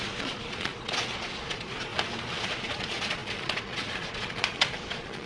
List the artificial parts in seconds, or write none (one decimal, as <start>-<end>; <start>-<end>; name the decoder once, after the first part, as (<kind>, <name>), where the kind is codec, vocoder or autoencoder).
0.0-1.9 (vocoder, Vocos); 2.4-5.3